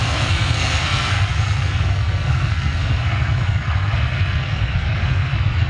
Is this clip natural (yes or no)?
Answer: no